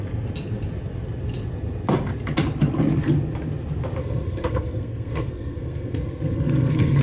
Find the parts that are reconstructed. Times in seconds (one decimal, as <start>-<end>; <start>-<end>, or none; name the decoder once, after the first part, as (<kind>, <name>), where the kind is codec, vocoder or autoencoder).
4.0-7.0 (codec, SNAC)

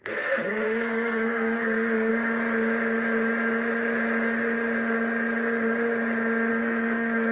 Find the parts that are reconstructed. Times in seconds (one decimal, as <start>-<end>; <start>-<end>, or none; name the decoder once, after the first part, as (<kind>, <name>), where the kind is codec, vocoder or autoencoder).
0.0-2.1 (codec, SNAC); 6.5-7.3

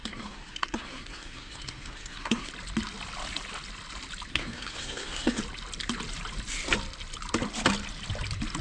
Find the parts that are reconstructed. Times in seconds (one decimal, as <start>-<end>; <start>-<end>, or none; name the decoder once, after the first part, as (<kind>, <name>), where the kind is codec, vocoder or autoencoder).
0.0-2.5 (codec, SNAC); 4.3-5.4

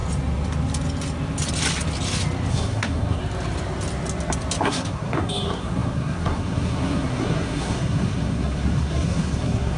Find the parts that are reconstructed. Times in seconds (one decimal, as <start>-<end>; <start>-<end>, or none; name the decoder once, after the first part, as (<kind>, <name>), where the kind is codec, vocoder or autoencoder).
2.5-3.2 (codec, SNAC); 4.6-9.8

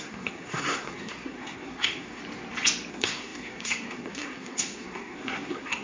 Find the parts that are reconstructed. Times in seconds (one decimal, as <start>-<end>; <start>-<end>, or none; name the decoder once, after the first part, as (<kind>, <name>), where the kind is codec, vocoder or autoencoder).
0.0-2.2 (codec, SNAC); 2.9-5.8